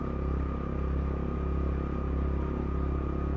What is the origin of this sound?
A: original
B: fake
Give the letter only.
A